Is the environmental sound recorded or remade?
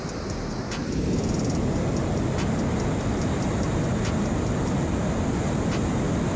recorded